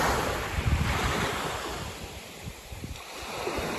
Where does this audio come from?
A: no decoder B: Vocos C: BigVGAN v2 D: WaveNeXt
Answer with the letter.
C